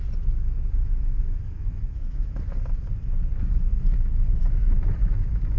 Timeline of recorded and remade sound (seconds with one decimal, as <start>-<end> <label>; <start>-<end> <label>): 0.0-0.8 recorded; 0.8-2.4 remade; 2.4-5.6 recorded